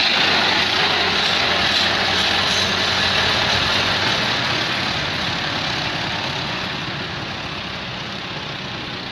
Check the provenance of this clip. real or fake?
fake